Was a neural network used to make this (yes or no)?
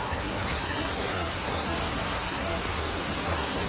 yes